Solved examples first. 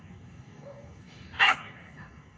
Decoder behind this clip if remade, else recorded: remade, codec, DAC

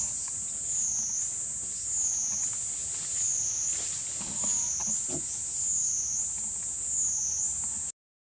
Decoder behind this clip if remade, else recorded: recorded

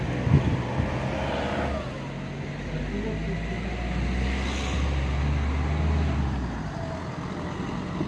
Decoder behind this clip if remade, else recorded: recorded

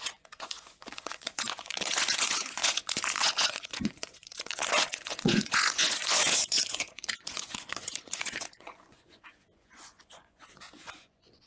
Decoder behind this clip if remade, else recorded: remade, vocoder, Vocos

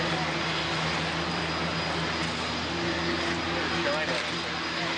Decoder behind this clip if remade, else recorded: recorded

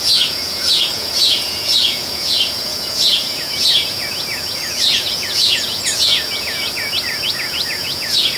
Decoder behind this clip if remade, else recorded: remade, vocoder, Vocos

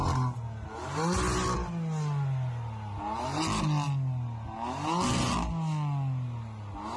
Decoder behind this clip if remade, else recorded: recorded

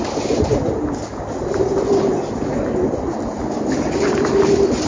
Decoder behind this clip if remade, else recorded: recorded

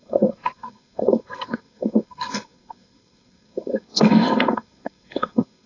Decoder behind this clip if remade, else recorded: remade, codec, SNAC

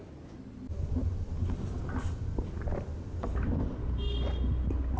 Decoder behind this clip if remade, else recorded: recorded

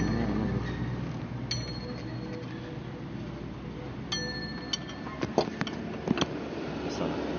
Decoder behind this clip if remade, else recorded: recorded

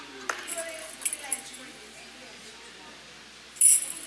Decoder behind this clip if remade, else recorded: recorded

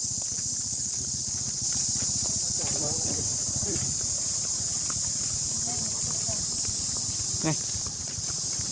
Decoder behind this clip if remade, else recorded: remade, vocoder, BigVGAN v2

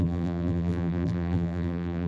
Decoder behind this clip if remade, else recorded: remade, vocoder, BigVGAN v2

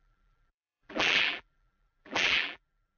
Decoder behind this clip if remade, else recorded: remade, vocoder, BigVGAN v2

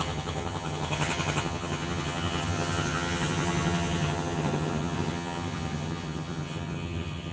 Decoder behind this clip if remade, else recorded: remade, vocoder, HiFi-GAN